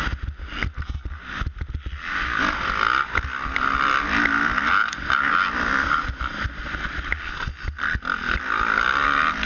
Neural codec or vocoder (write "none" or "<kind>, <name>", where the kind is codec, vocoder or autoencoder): none